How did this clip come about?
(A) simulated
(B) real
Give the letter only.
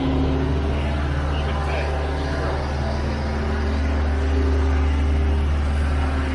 B